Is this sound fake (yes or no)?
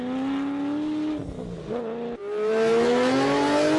no